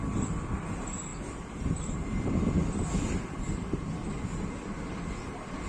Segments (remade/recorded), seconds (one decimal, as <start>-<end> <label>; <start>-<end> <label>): 0.0-5.7 recorded